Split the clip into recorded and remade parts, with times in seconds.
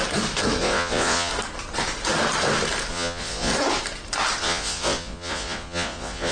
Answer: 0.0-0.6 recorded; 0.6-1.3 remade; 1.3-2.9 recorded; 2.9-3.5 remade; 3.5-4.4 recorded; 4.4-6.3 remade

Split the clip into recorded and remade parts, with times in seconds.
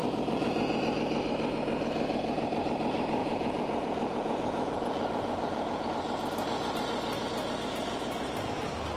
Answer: 0.0-0.8 remade; 0.8-3.2 recorded; 3.2-5.9 remade; 5.9-9.0 recorded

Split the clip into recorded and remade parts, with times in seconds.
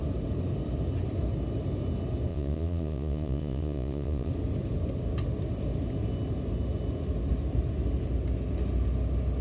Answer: 0.0-2.3 recorded; 2.3-4.3 remade; 4.3-9.4 recorded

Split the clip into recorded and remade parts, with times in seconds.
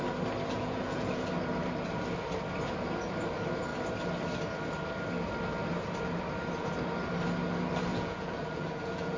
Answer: 0.0-0.5 recorded; 0.5-1.3 remade; 1.3-7.9 recorded; 7.9-9.2 remade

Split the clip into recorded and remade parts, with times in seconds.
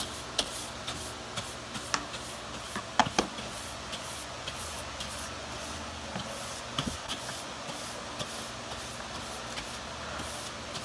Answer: 0.0-3.0 recorded; 3.0-7.7 remade; 7.7-10.8 recorded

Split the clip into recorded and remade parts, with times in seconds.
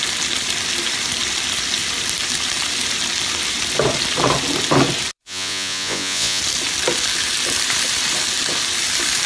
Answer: 0.0-5.2 recorded; 5.2-6.4 remade; 6.4-9.3 recorded